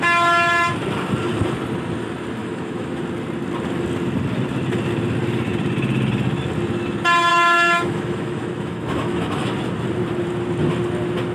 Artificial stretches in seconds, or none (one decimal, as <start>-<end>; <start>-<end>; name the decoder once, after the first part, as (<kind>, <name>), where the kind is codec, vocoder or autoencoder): 2.4-3.0 (autoencoder, DAC-VAE); 7.3-9.5